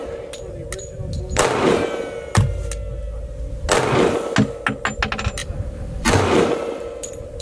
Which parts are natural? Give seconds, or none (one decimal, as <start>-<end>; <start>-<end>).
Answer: 0.0-5.4